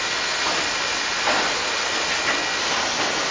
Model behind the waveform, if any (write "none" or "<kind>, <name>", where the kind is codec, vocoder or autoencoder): none